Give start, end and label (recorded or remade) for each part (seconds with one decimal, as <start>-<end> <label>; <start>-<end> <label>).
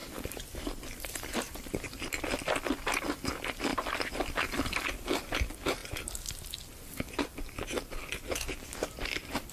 0.0-2.2 remade; 2.2-3.7 recorded; 3.7-5.1 remade; 5.1-9.5 recorded